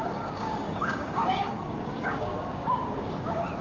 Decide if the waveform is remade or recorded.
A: remade